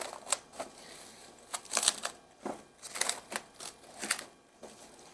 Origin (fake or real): real